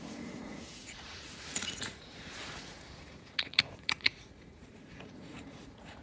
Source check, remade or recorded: remade